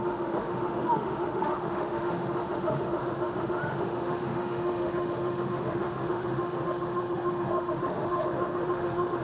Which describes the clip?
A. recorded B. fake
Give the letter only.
B